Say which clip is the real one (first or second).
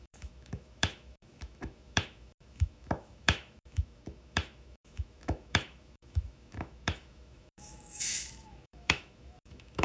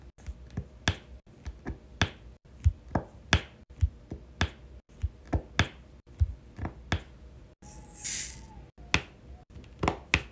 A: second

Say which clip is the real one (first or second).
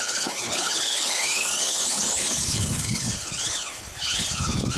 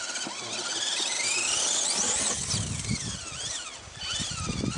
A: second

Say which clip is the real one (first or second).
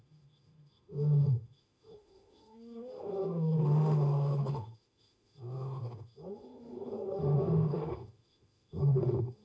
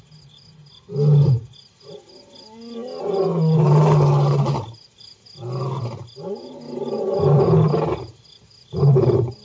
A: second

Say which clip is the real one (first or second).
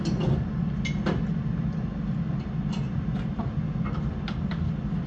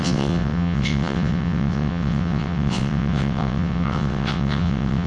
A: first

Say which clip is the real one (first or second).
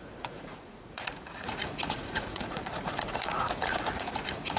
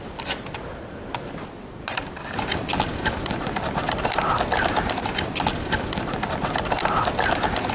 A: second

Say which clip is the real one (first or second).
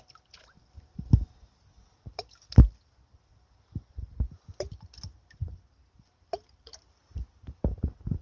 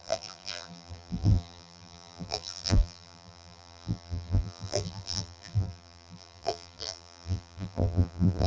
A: first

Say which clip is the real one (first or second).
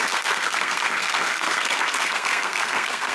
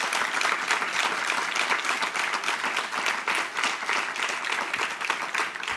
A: second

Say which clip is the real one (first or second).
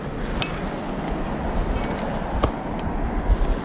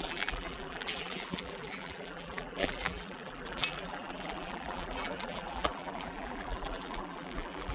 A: first